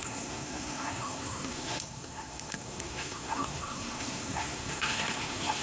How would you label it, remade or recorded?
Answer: remade